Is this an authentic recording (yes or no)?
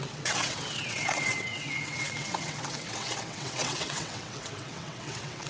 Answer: no